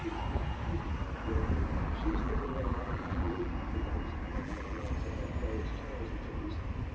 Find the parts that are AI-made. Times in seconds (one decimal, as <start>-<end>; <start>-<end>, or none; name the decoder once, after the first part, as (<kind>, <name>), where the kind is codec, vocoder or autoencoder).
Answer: 2.0-3.5 (vocoder, BigVGAN v2); 4.3-4.9